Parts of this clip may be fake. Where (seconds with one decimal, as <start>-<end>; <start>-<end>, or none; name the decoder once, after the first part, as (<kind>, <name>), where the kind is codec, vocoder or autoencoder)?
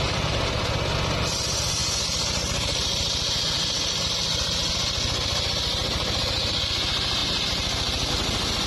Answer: none